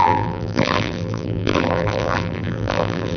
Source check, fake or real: fake